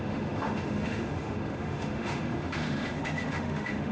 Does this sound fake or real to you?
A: fake